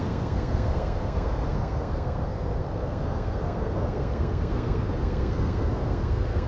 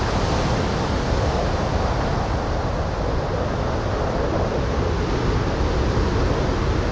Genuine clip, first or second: second